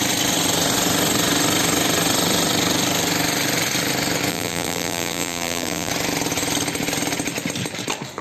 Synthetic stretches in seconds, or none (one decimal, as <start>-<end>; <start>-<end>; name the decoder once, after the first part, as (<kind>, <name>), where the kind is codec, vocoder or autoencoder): 4.3-5.9 (vocoder, BigVGAN v2)

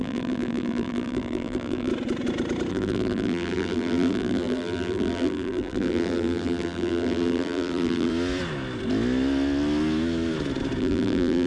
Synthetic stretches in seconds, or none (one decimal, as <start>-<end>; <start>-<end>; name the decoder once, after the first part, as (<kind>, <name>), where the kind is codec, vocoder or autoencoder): 0.0-1.9 (vocoder, BigVGAN v2); 2.7-8.1; 10.8-11.5

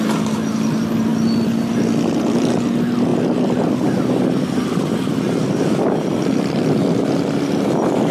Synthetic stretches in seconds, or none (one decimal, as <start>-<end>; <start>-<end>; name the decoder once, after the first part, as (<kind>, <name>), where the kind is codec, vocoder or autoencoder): none

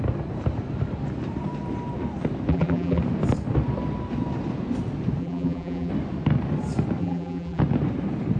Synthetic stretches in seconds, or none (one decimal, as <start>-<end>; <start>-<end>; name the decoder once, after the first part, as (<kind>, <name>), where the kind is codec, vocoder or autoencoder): 2.5-3.0 (vocoder, BigVGAN v2); 5.2-5.9; 7.0-7.6